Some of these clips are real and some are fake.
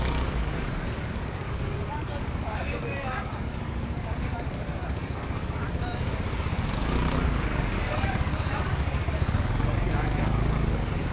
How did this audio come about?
fake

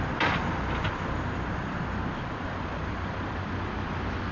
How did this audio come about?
real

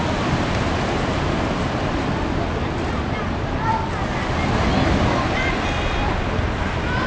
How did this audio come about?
real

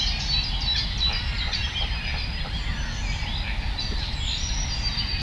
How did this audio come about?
real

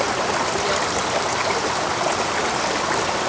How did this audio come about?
real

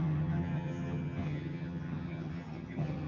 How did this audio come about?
fake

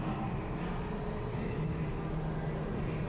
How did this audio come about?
real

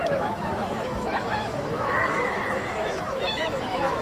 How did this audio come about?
fake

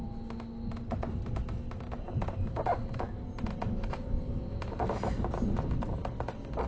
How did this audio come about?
real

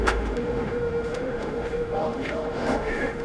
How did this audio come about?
fake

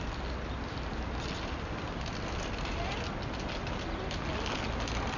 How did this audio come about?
real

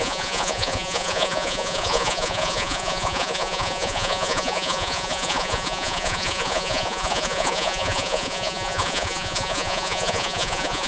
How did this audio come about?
fake